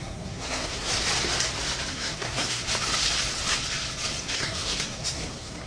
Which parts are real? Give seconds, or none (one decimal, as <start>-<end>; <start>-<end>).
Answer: 0.9-1.9; 2.6-4.2